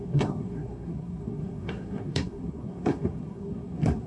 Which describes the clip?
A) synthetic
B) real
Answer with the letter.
A